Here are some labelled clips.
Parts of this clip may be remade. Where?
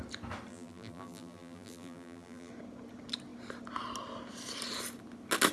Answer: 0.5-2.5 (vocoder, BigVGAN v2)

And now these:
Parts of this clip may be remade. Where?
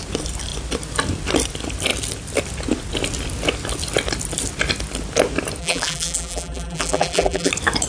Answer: 5.6-7.5 (vocoder, BigVGAN v2)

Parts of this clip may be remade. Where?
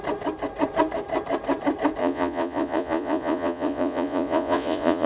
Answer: 2.0-5.1 (vocoder, Vocos)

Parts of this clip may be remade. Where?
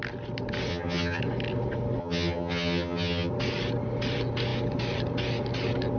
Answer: 0.7-1.2 (vocoder, HiFi-GAN); 2.0-3.3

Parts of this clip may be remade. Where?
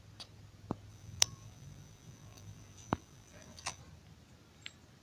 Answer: 0.9-3.8 (vocoder, BigVGAN v2)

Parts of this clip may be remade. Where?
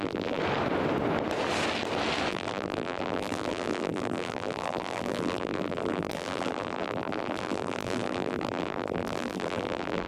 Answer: 0.0-0.4 (vocoder, BigVGAN v2); 2.3-10.1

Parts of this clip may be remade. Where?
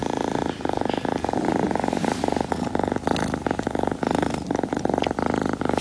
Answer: none